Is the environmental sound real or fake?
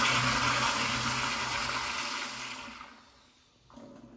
real